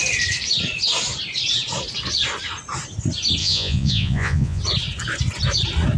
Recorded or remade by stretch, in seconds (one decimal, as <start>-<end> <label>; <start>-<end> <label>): 0.0-3.4 recorded; 3.4-4.6 remade; 4.6-6.0 recorded